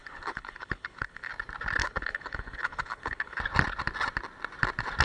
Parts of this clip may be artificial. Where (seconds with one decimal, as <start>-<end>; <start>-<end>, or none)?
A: 0.0-1.3; 1.8-3.4